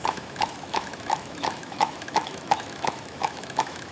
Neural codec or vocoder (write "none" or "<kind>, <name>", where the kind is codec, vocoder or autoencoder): autoencoder, DAC-VAE